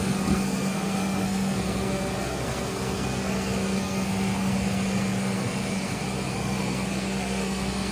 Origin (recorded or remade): remade